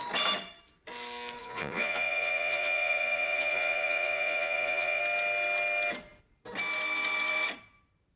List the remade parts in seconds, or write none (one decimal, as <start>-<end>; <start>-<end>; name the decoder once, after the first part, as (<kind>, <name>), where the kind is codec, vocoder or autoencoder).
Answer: 1.4-5.0 (vocoder, Vocos)